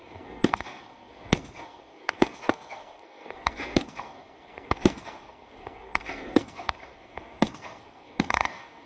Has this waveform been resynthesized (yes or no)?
yes